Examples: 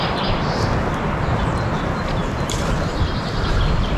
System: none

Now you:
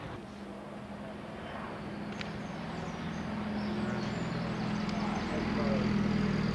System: none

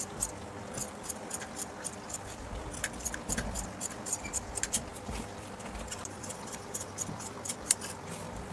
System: vocoder, BigVGAN v2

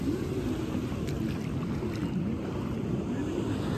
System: none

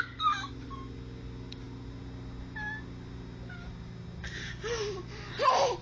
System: none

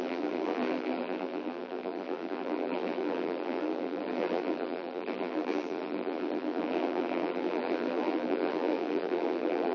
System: vocoder, BigVGAN v2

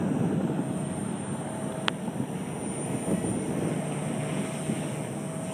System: none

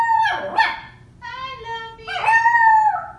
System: none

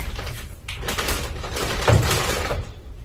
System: vocoder, BigVGAN v2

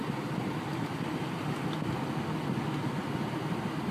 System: none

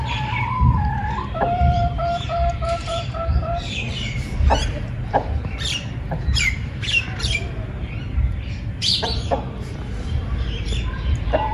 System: vocoder, BigVGAN v2